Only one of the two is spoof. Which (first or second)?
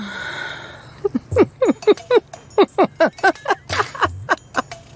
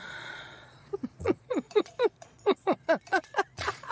second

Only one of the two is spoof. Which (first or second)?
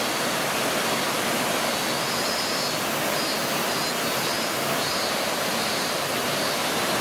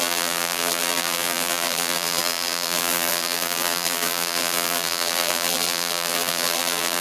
second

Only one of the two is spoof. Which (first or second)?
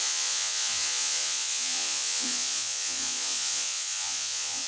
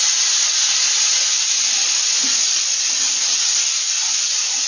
first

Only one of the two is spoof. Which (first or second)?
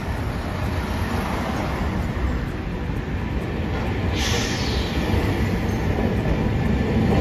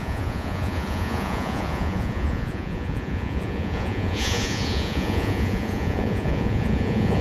second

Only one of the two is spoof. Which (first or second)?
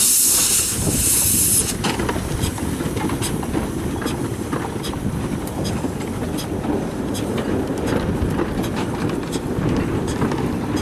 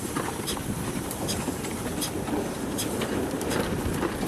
second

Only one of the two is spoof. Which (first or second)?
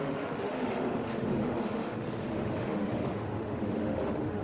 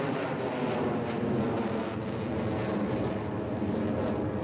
first